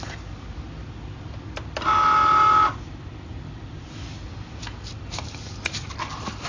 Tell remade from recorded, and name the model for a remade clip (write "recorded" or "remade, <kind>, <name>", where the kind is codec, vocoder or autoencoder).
recorded